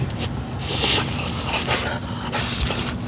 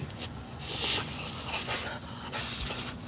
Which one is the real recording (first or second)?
first